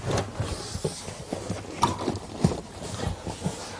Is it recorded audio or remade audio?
recorded